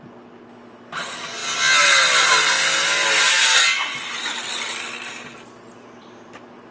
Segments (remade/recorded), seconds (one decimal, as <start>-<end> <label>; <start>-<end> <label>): 0.0-6.7 recorded